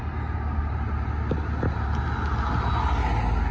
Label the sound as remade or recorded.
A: recorded